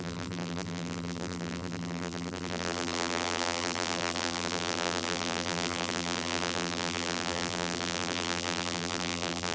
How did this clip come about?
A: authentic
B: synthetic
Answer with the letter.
B